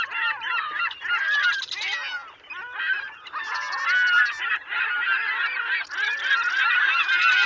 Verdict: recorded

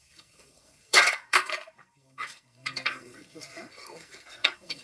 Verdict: remade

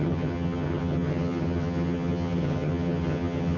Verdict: remade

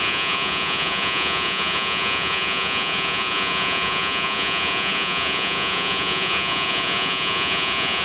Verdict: remade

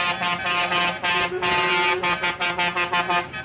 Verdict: recorded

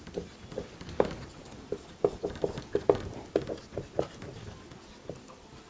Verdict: recorded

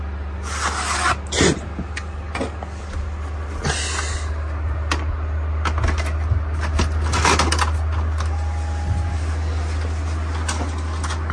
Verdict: recorded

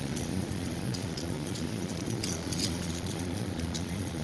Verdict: remade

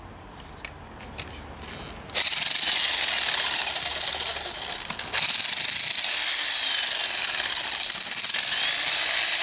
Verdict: recorded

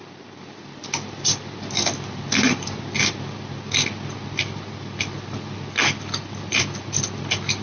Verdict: recorded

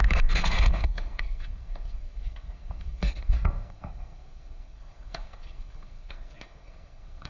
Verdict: remade